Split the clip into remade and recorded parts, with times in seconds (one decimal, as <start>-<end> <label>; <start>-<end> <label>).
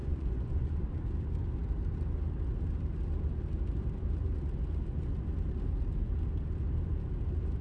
0.0-1.0 remade; 1.0-7.6 recorded